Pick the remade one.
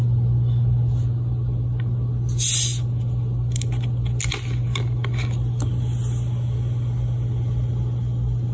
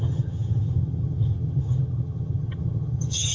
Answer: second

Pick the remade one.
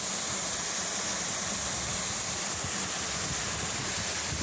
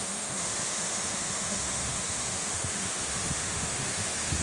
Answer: second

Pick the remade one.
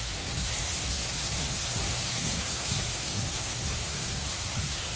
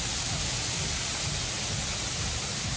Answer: first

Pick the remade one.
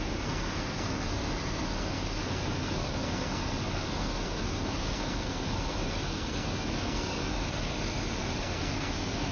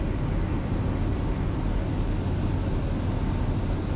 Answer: first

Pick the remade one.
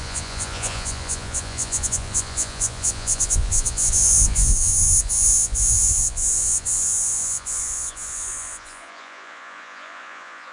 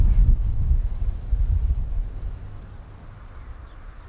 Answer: first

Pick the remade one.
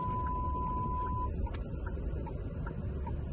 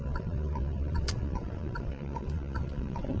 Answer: second